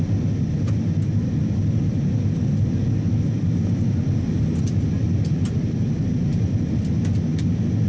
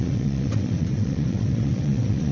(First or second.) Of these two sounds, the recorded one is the first